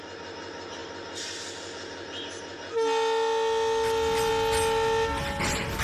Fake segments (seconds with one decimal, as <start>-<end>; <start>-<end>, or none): none